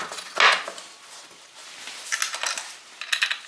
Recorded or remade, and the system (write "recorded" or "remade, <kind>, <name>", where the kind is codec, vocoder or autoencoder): recorded